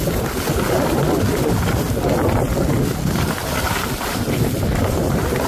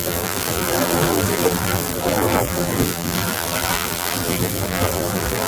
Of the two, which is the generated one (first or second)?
second